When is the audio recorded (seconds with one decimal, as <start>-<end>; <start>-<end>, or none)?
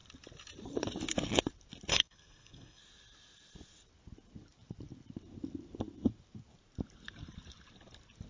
0.0-1.9; 2.8-8.3